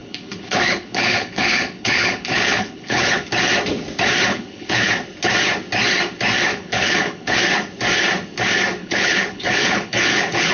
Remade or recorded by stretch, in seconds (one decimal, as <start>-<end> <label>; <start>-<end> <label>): 0.0-3.3 remade; 3.3-4.3 recorded; 4.3-4.9 remade; 4.9-6.5 recorded; 6.5-7.4 remade; 7.4-8.8 recorded; 8.8-10.5 remade